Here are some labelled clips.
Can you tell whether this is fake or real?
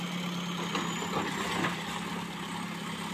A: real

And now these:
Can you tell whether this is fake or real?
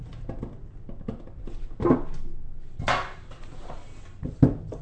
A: real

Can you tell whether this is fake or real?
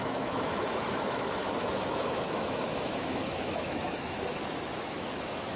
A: fake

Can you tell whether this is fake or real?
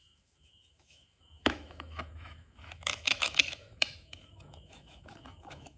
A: fake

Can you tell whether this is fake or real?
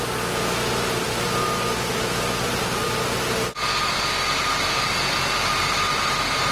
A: real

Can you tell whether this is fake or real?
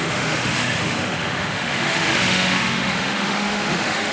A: fake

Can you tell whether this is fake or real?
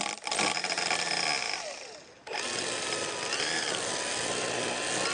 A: real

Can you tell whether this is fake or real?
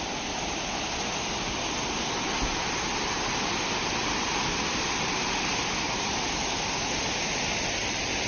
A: real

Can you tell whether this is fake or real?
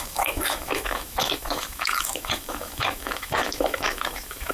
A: fake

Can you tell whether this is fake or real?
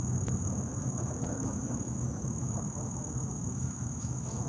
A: fake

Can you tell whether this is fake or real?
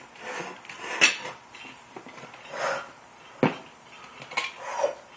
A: real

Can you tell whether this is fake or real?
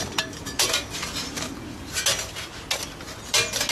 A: real